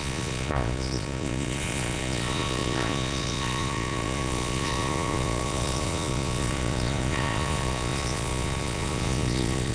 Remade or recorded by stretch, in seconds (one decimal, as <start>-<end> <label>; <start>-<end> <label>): 0.0-9.7 remade